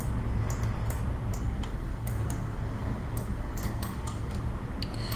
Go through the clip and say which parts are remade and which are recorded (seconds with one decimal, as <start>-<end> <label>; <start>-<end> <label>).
0.0-1.3 recorded; 1.3-4.4 remade; 4.4-5.2 recorded